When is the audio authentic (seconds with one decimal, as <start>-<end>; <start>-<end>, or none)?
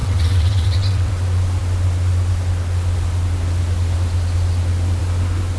1.1-5.6